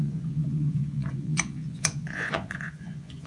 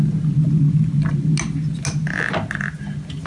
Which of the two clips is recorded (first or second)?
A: second